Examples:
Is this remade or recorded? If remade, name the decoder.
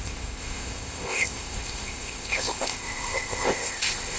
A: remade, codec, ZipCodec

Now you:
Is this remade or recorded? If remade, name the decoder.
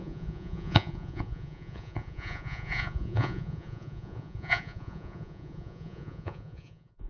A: remade, vocoder, Vocos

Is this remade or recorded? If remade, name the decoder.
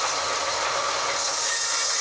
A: recorded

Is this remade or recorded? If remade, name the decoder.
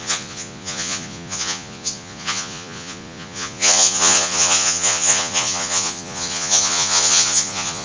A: remade, vocoder, Vocos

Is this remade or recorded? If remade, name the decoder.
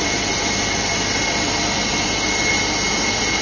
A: recorded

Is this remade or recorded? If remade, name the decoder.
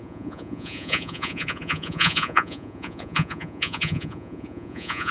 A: remade, vocoder, Vocos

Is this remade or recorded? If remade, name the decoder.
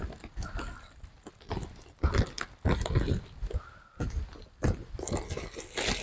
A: recorded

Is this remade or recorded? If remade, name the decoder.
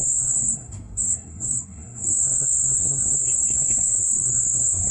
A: remade, codec, SNAC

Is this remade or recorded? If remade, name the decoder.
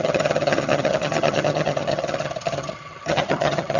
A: remade, vocoder, HiFi-GAN